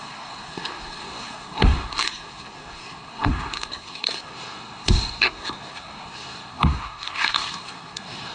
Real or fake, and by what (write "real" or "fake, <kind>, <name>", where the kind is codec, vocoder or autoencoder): fake, codec, SNAC